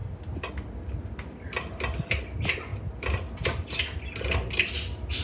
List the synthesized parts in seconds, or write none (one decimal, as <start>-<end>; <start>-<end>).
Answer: none